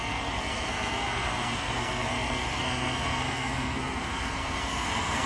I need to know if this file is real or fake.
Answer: fake